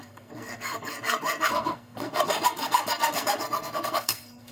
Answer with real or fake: fake